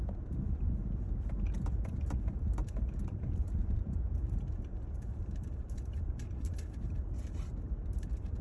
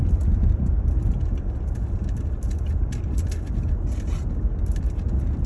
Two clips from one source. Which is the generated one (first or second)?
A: first